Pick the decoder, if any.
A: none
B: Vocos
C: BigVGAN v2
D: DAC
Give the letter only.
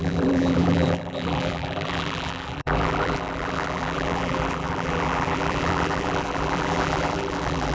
C